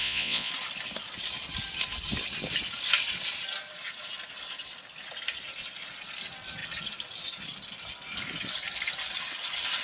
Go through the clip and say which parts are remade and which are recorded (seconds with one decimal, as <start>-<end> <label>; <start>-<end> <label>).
0.0-0.5 remade; 0.5-9.8 recorded